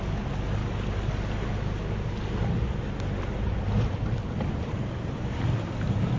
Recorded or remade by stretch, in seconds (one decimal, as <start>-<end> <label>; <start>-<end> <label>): 0.0-6.2 recorded